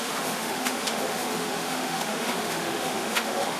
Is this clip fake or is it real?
fake